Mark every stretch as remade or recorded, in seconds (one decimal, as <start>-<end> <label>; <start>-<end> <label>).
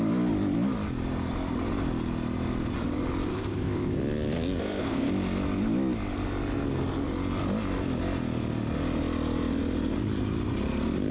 0.0-3.3 recorded; 3.3-4.0 remade; 4.0-4.6 recorded; 4.6-5.1 remade; 5.1-11.1 recorded